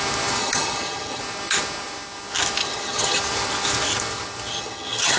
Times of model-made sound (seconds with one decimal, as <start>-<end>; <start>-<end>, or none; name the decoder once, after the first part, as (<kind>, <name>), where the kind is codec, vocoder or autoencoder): 0.4-1.2 (vocoder, HiFi-GAN); 2.6-3.2; 4.5-5.2